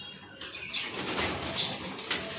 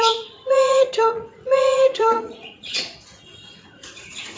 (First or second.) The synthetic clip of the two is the second